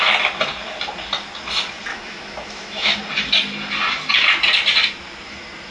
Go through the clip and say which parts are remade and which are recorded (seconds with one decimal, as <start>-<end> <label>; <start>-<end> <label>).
0.0-1.9 recorded; 1.9-3.0 remade; 3.0-5.7 recorded

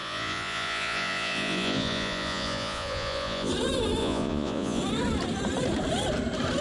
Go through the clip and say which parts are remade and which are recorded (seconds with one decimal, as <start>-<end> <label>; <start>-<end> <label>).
0.0-3.5 remade; 3.5-4.0 recorded; 4.0-4.8 remade; 4.8-6.6 recorded